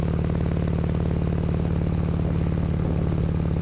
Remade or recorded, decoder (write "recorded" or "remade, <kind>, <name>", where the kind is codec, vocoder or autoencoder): recorded